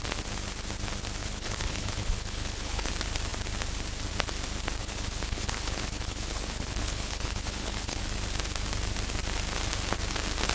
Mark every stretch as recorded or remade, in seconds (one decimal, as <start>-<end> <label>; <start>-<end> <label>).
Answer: 0.0-1.2 recorded; 1.2-2.9 remade; 2.9-4.8 recorded; 4.8-8.0 remade; 8.0-10.5 recorded